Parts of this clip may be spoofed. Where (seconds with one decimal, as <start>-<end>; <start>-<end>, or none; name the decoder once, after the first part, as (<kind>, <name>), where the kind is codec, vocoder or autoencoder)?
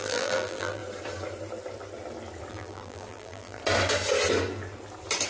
0.0-0.8 (vocoder, BigVGAN v2); 2.5-3.6